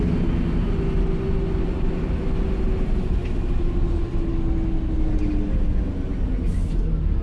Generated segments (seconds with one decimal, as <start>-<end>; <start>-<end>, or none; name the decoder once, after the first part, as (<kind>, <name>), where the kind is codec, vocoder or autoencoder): none

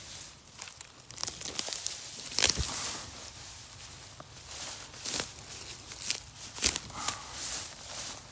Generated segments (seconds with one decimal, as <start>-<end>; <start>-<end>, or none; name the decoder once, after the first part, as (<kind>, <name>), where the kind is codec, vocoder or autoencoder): none